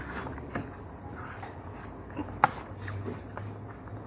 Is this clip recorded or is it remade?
recorded